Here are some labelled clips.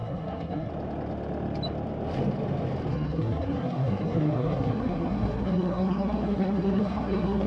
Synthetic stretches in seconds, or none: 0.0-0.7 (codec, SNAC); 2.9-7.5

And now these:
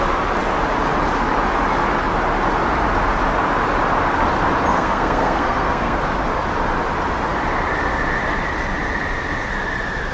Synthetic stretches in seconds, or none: 4.7-6.0 (codec, SNAC)

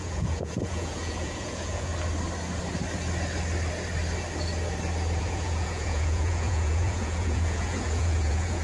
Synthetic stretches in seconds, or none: 0.0-1.9 (vocoder, Vocos); 5.2-8.6

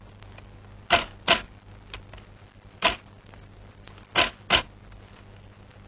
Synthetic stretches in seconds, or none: none

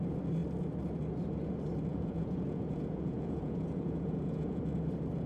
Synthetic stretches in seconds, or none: 1.9-4.6 (vocoder, Vocos)